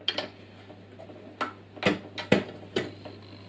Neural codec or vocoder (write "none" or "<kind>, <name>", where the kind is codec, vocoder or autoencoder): none